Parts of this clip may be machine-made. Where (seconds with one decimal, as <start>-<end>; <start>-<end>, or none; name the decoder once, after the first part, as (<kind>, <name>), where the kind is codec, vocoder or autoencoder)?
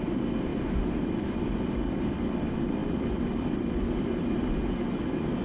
none